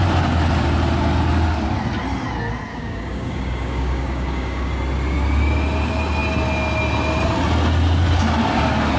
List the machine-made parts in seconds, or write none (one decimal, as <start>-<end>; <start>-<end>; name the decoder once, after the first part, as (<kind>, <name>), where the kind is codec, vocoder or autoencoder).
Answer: 2.7-4.7 (codec, DAC)